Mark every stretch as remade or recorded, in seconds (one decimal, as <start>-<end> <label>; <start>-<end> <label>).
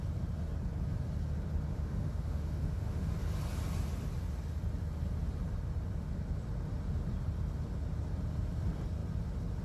0.0-1.7 recorded; 1.7-3.1 remade; 3.1-9.6 recorded